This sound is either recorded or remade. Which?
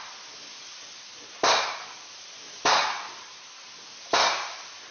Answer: recorded